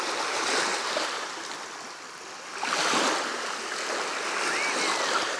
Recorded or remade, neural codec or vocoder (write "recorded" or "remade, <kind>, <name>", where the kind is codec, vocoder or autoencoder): recorded